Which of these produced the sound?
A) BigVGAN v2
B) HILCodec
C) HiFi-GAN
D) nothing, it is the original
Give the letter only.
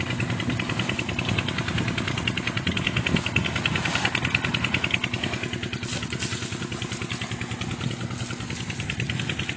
D